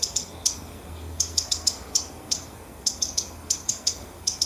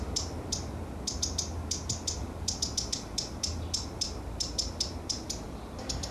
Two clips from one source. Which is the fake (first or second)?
first